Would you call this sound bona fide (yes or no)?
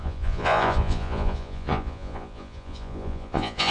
no